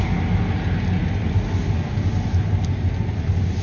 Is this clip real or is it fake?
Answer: real